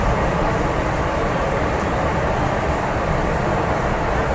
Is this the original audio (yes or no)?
yes